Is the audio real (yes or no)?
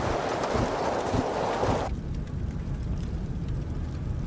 no